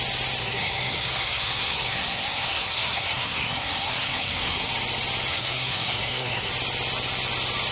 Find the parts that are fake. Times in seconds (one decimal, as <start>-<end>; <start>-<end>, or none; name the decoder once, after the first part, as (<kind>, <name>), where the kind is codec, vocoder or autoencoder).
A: 0.4-4.7 (codec, SNAC); 5.3-6.5